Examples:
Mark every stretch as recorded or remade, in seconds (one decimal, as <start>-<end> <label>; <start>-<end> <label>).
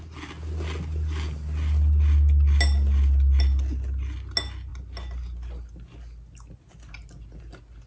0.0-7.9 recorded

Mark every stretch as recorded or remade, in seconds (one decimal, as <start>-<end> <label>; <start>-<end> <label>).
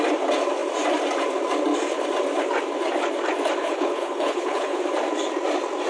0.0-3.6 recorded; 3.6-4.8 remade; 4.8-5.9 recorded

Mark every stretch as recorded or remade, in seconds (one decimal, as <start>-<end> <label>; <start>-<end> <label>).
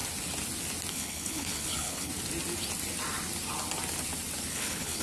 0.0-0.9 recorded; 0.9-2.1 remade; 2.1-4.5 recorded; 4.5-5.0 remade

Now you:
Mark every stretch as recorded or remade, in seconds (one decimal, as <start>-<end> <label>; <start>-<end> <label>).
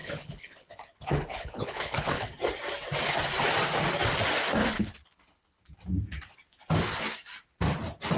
0.0-2.3 remade; 2.3-4.6 recorded; 4.6-5.6 remade; 5.6-8.2 recorded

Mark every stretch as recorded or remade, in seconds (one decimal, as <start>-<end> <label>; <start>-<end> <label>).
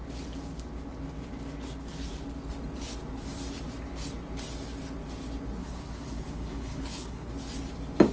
0.0-5.6 recorded; 5.6-7.3 remade; 7.3-8.1 recorded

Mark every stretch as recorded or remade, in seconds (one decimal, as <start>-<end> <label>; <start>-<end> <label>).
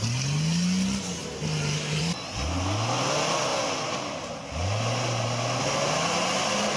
0.0-6.8 recorded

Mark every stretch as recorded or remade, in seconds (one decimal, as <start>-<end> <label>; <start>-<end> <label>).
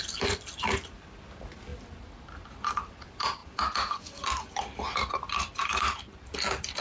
0.0-6.8 recorded